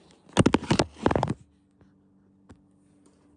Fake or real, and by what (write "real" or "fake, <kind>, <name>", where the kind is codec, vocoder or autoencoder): real